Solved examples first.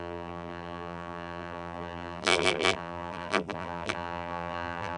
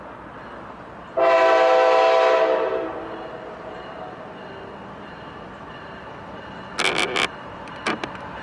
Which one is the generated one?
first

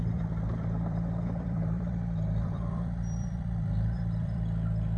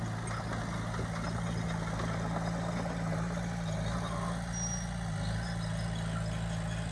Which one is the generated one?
first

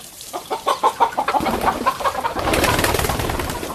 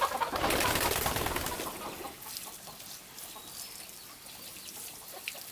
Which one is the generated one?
first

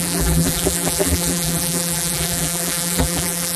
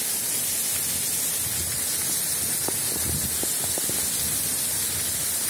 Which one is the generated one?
first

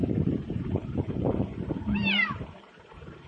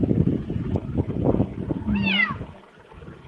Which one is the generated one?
first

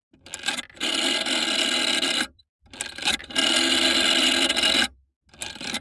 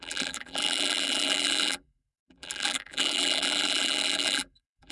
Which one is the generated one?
second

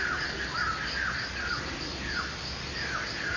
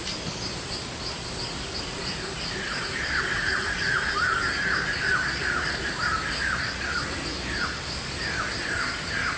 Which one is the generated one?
second